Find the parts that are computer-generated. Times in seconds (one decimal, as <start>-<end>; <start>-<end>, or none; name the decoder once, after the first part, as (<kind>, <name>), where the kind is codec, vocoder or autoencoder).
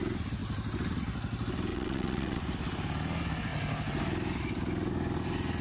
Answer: 1.7-2.4 (vocoder, WaveNeXt)